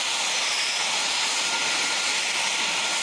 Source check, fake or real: real